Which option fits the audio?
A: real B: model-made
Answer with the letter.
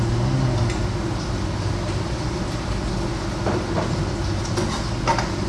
A